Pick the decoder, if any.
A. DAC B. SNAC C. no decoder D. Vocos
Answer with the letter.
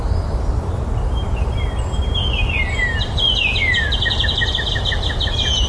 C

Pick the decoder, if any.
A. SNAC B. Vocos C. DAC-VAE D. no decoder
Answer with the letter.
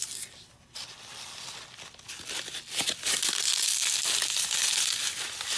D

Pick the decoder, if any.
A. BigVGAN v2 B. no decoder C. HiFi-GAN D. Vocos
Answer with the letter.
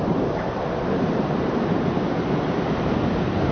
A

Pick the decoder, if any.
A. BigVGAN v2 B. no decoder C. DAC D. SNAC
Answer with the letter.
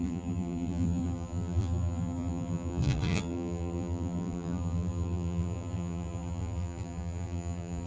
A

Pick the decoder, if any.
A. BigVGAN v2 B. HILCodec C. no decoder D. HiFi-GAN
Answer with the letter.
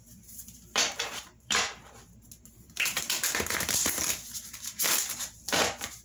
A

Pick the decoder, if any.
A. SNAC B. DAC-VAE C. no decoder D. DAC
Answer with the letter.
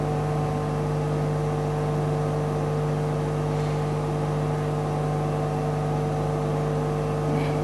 C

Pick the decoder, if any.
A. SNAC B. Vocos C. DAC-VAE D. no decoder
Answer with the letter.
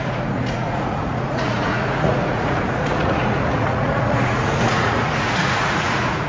B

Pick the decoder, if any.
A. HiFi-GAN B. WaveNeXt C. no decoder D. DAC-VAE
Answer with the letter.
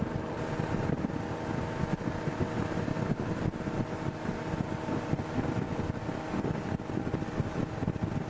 C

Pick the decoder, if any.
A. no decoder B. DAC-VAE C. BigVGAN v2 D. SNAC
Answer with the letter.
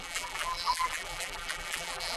C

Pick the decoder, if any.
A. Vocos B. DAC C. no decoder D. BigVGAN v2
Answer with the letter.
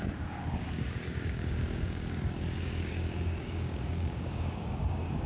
B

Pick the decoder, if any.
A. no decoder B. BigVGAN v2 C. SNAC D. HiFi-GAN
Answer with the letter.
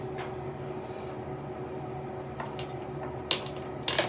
A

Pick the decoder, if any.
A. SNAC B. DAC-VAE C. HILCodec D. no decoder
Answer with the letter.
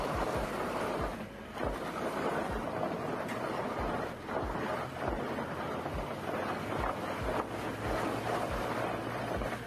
D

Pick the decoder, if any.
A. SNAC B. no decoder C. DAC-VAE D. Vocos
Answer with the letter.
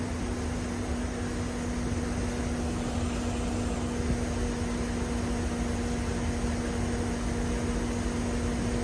B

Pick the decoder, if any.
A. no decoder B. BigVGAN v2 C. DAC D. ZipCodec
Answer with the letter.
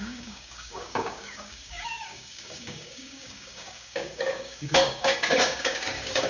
C